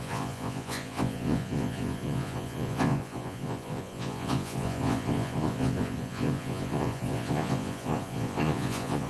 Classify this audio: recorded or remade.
remade